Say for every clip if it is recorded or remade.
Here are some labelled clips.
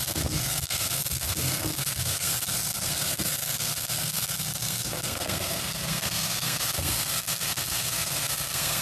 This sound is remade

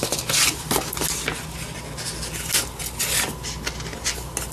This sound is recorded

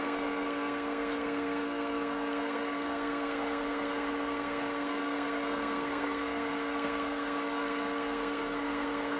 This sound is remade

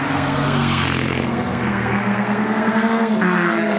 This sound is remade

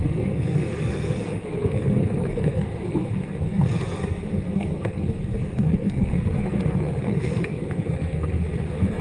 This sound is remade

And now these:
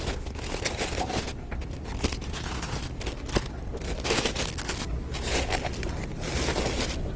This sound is recorded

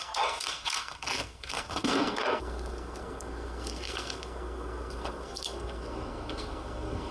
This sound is remade